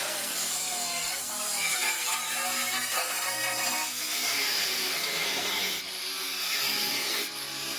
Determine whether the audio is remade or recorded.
remade